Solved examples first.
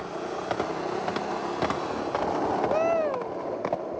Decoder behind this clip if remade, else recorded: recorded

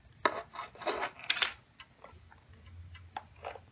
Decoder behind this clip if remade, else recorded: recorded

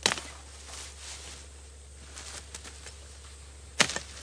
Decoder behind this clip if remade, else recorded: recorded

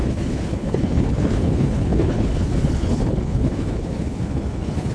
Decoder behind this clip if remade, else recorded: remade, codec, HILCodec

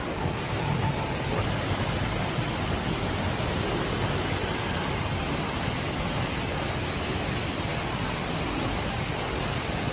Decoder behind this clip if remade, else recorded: recorded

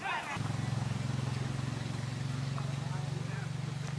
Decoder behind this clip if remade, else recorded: recorded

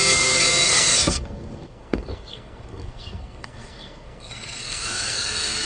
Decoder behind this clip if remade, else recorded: remade, codec, SNAC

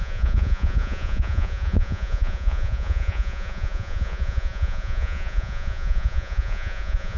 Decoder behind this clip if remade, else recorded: remade, vocoder, Vocos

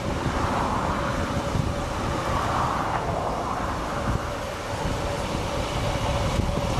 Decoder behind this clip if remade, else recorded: recorded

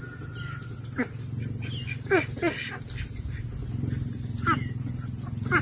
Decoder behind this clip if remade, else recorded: recorded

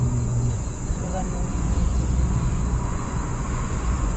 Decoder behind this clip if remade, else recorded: remade, vocoder, Vocos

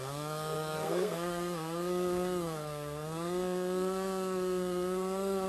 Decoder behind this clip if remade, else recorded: remade, codec, SNAC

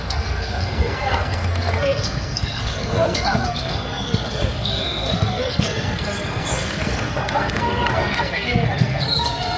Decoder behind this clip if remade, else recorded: remade, codec, SNAC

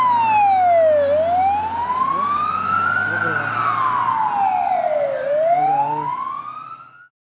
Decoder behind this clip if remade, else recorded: recorded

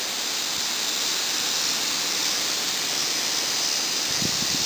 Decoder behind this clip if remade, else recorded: recorded